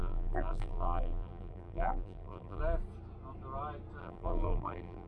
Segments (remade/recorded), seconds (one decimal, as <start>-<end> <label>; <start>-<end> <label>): 0.0-2.6 remade; 2.6-4.0 recorded; 4.0-5.1 remade